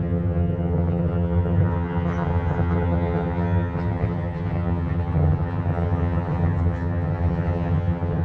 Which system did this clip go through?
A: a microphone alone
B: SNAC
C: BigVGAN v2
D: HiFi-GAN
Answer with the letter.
D